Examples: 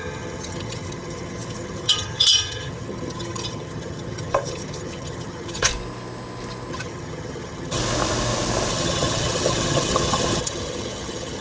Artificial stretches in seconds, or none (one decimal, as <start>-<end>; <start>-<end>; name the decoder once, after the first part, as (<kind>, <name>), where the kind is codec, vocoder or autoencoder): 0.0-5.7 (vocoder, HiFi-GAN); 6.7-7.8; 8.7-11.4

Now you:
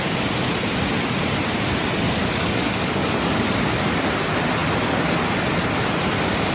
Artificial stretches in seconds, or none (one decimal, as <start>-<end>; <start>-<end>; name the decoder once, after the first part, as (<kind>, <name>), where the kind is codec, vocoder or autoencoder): 2.2-3.5 (codec, DAC)

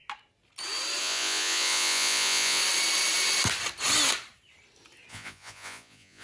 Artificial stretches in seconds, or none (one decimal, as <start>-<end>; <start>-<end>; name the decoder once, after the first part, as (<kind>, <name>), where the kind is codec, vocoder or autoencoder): 1.0-2.6 (vocoder, Vocos); 5.1-6.2

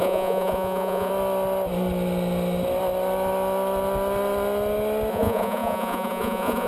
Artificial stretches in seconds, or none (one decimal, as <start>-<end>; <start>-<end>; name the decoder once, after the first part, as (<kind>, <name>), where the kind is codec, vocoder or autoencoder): 0.0-1.1 (vocoder, Vocos); 5.1-6.7

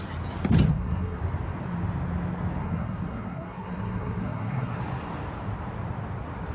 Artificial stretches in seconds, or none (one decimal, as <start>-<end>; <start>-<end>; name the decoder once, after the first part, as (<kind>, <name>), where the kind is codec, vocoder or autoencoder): 0.7-1.2 (codec, SNAC); 2.6-4.8

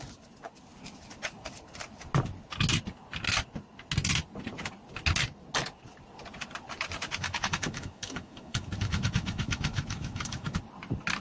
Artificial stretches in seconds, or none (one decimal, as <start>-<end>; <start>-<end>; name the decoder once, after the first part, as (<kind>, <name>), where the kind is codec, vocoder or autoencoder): 7.2-10.6 (autoencoder, DAC-VAE)